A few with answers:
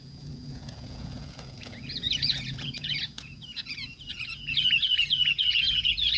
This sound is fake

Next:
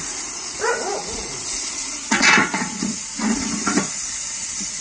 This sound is fake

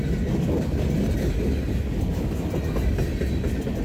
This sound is real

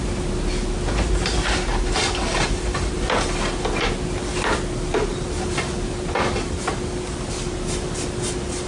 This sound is real